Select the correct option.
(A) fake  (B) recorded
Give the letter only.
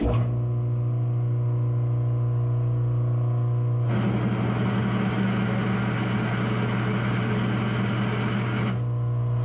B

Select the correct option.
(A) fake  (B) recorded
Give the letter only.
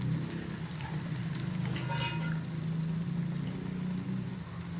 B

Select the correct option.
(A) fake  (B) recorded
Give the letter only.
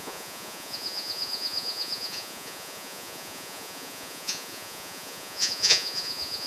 A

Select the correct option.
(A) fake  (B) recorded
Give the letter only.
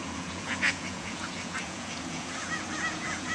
A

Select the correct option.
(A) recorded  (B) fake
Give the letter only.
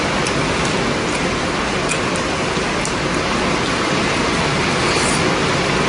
A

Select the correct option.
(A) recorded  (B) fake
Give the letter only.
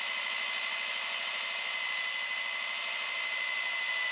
A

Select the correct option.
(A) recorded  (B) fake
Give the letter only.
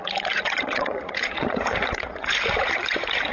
B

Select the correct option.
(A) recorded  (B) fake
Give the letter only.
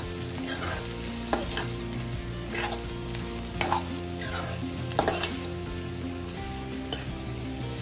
A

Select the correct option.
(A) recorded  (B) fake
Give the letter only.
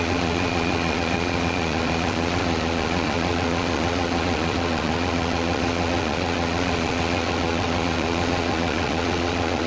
B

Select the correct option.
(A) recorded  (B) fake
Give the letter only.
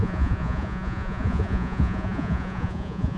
B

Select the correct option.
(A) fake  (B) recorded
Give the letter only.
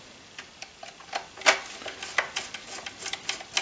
B